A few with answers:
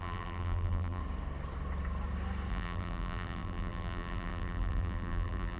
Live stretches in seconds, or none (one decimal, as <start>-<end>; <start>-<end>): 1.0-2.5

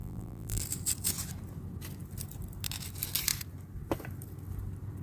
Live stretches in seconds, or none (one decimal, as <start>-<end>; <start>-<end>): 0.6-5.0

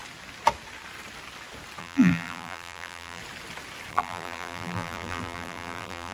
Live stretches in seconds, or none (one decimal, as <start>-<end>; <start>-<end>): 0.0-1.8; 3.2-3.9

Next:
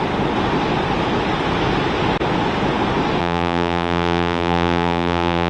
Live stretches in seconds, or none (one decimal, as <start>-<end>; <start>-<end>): 0.0-3.2

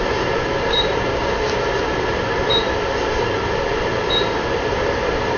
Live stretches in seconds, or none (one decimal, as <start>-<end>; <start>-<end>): 1.2-2.1

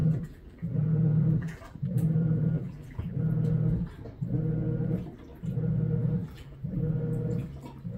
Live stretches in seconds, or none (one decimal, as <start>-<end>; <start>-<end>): 3.2-6.0; 6.9-8.0

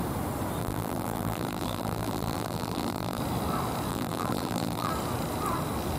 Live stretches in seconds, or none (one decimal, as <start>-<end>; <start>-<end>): 0.0-0.6; 3.2-3.9; 4.9-6.0

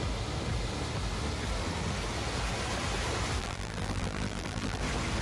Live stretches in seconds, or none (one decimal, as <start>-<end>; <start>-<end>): 0.0-3.4; 4.8-5.2